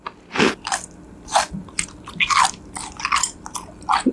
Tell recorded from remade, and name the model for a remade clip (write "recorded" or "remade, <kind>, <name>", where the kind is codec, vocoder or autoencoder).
recorded